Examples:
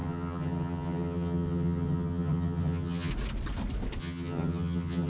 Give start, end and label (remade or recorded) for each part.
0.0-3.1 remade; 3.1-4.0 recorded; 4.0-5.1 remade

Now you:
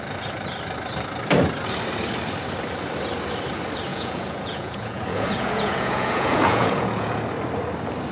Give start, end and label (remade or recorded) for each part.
0.0-3.9 recorded; 3.9-7.2 remade; 7.2-8.1 recorded

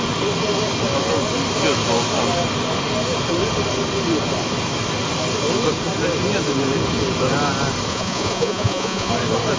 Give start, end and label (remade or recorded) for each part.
0.0-7.9 recorded; 7.9-9.1 remade; 9.1-9.6 recorded